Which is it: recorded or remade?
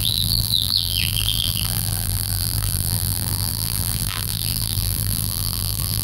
remade